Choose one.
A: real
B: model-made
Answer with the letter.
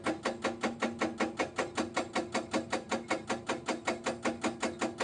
A